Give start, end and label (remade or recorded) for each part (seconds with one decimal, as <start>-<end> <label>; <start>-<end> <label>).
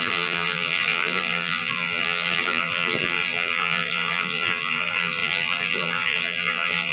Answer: 0.0-6.9 remade